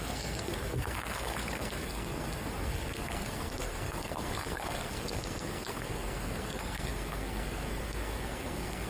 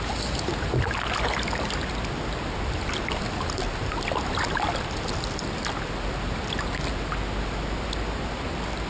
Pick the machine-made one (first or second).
first